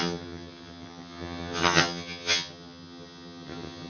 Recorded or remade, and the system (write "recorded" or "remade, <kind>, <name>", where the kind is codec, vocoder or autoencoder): remade, vocoder, HiFi-GAN